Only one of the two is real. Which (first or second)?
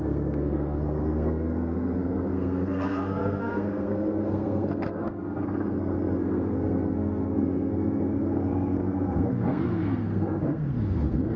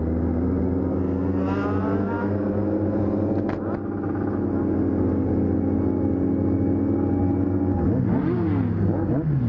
second